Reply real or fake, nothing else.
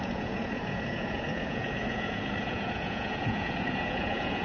fake